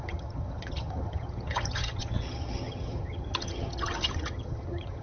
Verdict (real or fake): fake